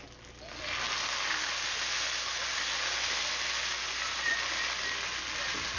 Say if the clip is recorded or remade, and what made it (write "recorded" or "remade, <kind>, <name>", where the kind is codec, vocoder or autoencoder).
recorded